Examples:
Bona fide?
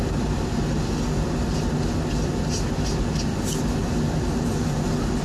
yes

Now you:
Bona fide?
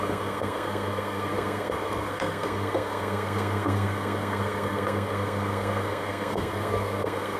no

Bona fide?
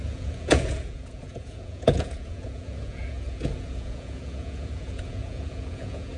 no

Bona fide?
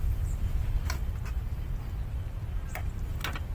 yes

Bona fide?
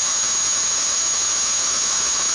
no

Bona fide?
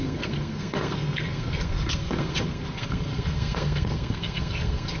no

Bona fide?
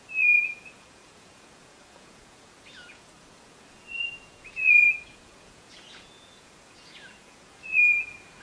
no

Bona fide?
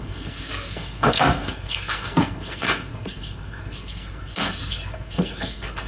no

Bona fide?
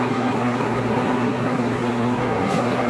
no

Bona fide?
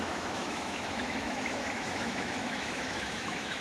no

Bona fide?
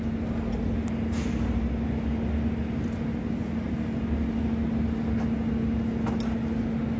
yes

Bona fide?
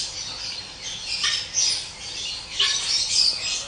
yes